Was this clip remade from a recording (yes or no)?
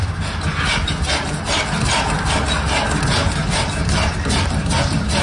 no